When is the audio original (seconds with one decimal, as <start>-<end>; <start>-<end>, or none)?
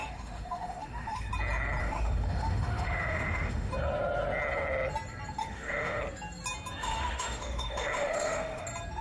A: 1.3-1.8; 3.7-5.4; 6.0-6.8; 8.6-9.0